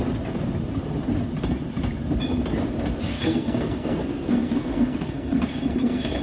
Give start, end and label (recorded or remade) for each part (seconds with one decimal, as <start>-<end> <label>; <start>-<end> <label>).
0.0-3.1 recorded; 3.1-6.2 remade